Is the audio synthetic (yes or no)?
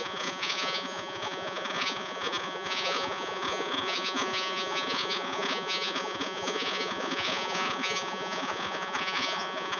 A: yes